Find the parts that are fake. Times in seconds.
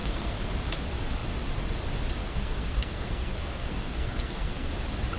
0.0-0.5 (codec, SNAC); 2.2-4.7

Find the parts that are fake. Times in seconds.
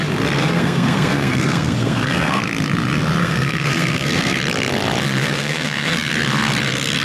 0.4-2.4 (codec, SNAC); 3.2-4.4; 5.2-6.1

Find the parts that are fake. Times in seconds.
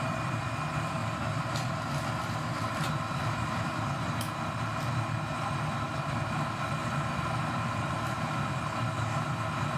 none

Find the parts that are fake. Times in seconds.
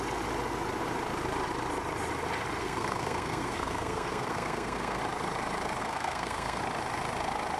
2.6-5.0 (codec, SNAC); 5.8-6.6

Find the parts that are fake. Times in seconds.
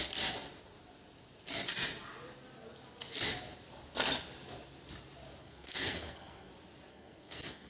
5.4-6.5 (codec, SNAC); 6.9-7.7